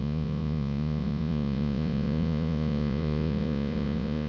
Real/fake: fake